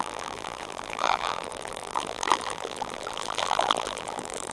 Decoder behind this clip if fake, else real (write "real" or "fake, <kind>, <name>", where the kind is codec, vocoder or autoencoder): fake, vocoder, BigVGAN v2